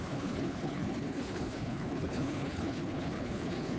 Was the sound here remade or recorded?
remade